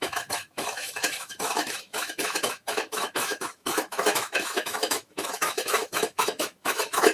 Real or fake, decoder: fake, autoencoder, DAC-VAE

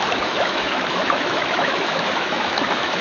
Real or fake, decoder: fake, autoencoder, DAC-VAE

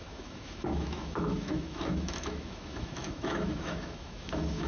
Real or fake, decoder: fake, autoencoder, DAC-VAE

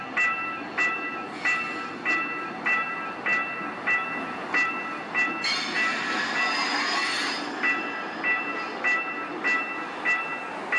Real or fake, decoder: real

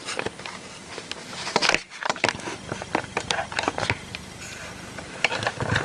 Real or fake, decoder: real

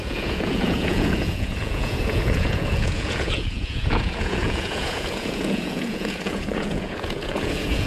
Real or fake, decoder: fake, vocoder, Vocos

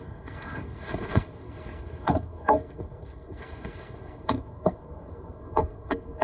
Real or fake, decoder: fake, codec, SNAC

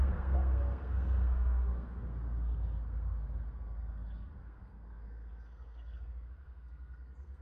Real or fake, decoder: fake, codec, SNAC